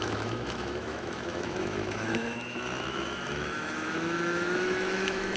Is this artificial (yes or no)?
yes